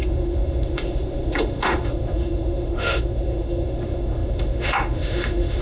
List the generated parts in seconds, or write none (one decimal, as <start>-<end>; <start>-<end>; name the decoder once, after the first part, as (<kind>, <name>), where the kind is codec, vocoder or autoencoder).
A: 0.0-5.6 (autoencoder, DAC-VAE)